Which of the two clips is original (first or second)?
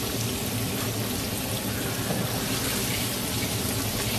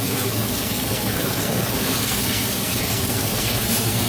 first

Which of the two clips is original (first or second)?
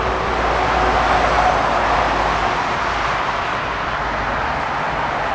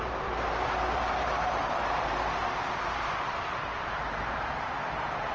first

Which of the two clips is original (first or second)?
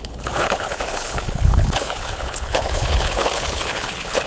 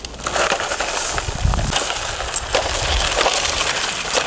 second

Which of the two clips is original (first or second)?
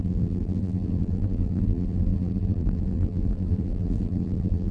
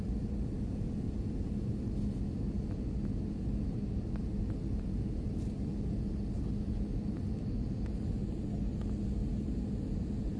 second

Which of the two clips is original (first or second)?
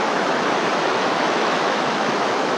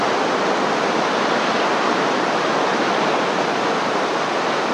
second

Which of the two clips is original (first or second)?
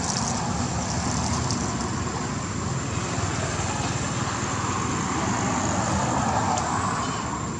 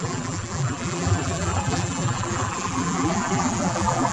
first